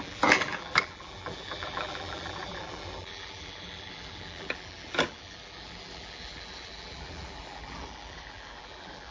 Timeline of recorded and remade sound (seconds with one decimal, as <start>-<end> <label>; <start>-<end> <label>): 0.0-9.1 remade